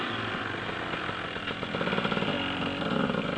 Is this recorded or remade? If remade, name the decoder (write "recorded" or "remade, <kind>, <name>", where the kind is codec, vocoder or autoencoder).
recorded